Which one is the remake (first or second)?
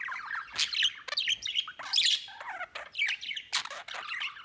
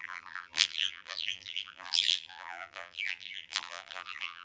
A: second